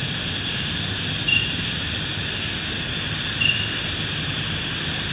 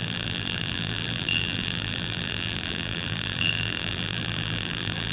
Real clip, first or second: first